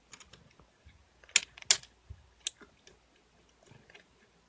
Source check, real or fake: real